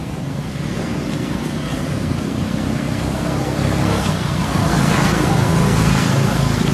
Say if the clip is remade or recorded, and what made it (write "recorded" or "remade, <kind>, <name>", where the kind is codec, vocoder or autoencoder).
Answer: remade, codec, SNAC